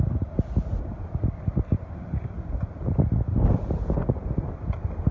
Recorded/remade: recorded